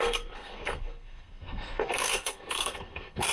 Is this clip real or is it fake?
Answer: fake